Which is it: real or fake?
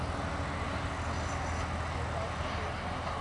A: real